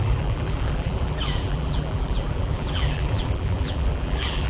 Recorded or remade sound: remade